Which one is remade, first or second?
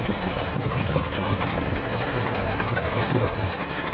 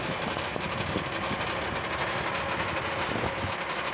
first